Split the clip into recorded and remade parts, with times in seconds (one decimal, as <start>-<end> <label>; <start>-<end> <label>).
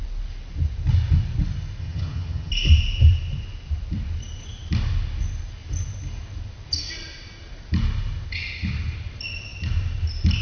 0.0-1.8 recorded; 1.8-2.5 remade; 2.5-10.4 recorded